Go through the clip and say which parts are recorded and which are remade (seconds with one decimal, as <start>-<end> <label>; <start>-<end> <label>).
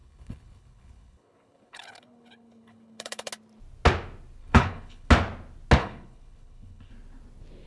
0.0-3.3 remade; 3.3-4.4 recorded; 4.4-5.1 remade; 5.1-5.8 recorded; 5.8-6.9 remade; 6.9-7.7 recorded